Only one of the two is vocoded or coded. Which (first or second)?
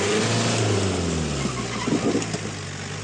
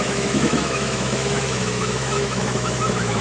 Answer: second